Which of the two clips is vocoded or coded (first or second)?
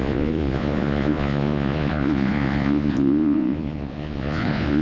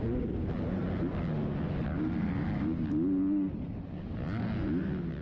first